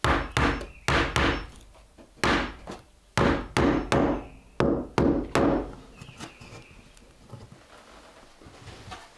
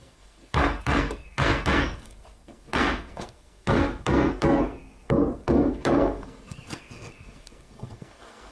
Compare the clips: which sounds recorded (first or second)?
first